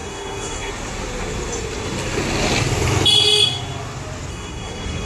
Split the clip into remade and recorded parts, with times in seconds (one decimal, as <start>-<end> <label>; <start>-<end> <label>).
0.0-0.7 remade; 0.7-4.3 recorded; 4.3-5.1 remade